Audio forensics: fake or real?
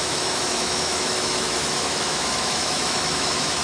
fake